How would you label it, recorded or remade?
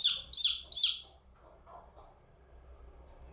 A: recorded